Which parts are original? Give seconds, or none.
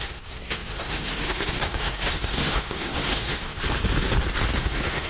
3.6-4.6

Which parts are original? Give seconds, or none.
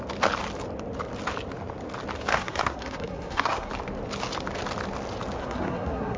0.0-2.3; 3.7-5.4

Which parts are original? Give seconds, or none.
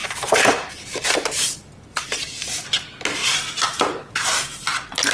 0.7-3.2; 4.6-5.1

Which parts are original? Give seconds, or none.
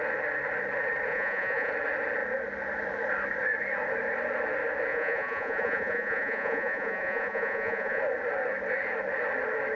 0.0-1.1; 1.7-4.9; 8.0-9.7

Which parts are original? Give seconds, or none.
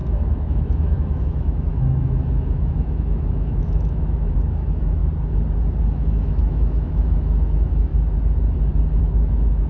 5.0-6.0; 7.9-9.0